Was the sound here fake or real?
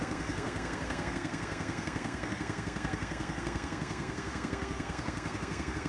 fake